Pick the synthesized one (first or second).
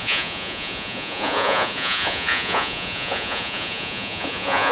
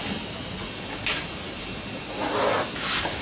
first